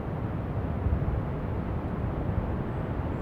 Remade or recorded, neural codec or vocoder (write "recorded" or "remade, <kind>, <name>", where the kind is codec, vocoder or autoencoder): recorded